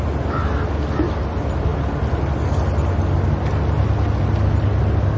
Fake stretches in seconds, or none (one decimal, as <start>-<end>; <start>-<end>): none